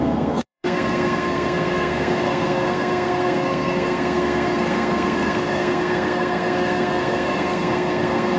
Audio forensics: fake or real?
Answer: fake